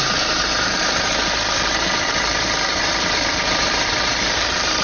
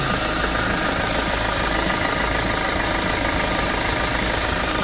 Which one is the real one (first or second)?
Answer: second